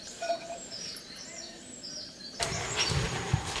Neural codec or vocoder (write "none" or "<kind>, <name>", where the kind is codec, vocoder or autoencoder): vocoder, BigVGAN v2